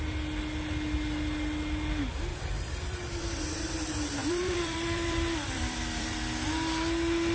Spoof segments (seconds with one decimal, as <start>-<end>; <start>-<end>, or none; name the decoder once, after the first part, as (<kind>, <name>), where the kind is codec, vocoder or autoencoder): 2.3-3.4 (vocoder, BigVGAN v2); 4.2-6.2